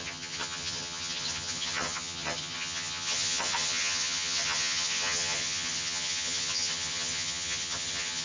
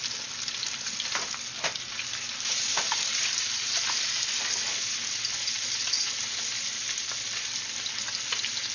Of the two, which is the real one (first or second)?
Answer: second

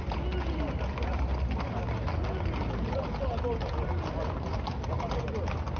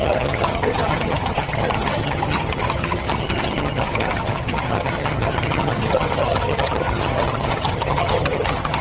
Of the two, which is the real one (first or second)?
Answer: first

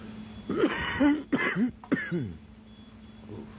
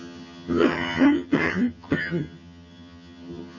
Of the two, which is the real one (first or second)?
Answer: first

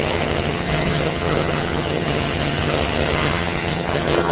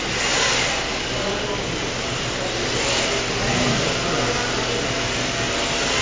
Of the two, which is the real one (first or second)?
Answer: second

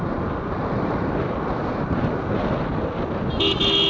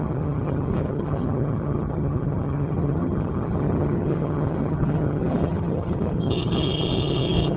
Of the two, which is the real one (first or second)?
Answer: first